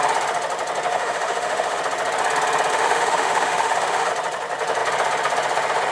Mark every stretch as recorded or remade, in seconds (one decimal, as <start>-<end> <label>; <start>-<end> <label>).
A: 0.0-0.9 recorded; 0.9-1.8 remade; 1.8-2.7 recorded; 2.7-4.1 remade; 4.1-5.9 recorded